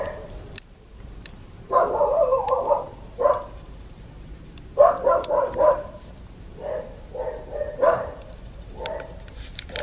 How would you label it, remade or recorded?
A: remade